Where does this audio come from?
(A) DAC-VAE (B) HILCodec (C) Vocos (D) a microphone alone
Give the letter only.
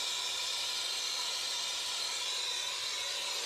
D